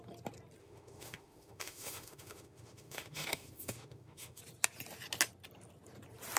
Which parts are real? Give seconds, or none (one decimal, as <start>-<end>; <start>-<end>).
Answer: 0.0-0.6; 4.4-6.4